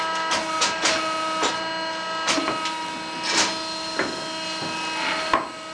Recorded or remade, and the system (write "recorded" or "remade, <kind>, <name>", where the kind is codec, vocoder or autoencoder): recorded